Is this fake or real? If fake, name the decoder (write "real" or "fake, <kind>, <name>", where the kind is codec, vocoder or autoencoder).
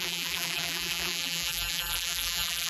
fake, vocoder, BigVGAN v2